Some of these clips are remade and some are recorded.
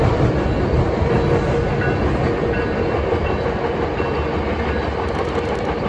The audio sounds recorded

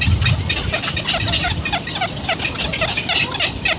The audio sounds recorded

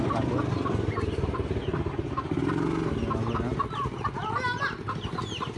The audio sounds recorded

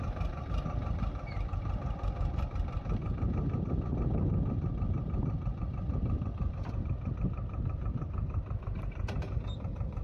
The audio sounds remade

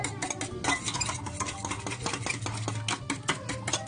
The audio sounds recorded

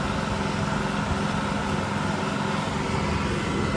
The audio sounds recorded